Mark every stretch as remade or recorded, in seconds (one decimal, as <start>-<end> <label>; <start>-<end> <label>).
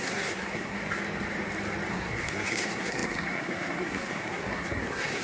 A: 0.0-0.8 remade; 0.8-1.9 recorded; 1.9-5.2 remade